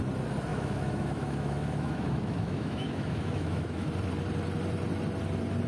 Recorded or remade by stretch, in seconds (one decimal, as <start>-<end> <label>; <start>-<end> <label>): 0.0-0.5 recorded; 0.5-3.9 remade; 3.9-5.7 recorded